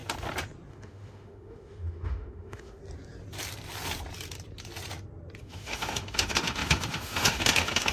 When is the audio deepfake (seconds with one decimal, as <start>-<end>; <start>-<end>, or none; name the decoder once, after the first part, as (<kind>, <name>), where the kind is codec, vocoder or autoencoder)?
0.7-2.8 (autoencoder, DAC-VAE); 5.4-7.9